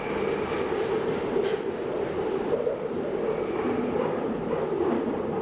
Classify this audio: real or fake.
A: real